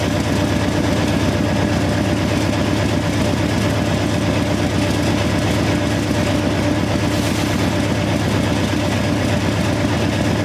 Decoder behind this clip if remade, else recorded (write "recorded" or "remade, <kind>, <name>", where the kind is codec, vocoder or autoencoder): recorded